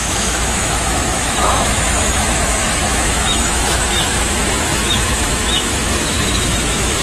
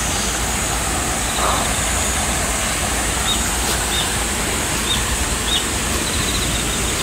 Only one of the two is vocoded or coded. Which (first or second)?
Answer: first